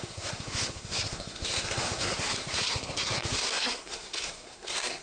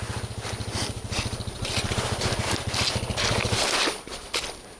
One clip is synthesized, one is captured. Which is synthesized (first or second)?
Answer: first